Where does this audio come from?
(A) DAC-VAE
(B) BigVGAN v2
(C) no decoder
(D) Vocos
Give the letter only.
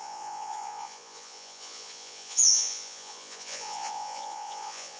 D